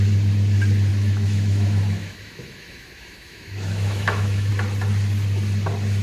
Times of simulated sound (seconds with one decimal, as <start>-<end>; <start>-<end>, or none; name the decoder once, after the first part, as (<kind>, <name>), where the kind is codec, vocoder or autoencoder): 0.9-4.5 (autoencoder, DAC-VAE)